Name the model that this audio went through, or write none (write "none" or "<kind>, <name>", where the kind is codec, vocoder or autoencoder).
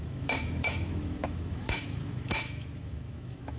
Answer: autoencoder, DAC-VAE